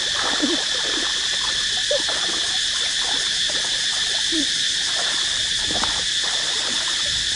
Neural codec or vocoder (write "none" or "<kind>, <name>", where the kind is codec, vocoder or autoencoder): vocoder, BigVGAN v2